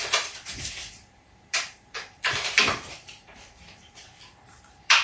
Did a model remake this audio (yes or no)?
yes